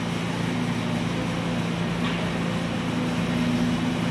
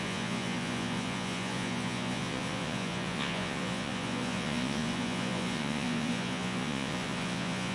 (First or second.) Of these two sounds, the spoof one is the second